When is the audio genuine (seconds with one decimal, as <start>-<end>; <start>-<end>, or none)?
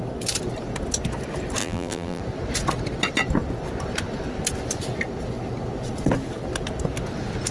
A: 0.0-1.6; 2.2-7.5